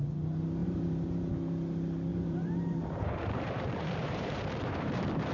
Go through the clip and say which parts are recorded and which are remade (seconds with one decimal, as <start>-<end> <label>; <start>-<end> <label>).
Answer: 0.0-0.6 recorded; 0.6-1.3 remade; 1.3-2.1 recorded; 2.1-5.3 remade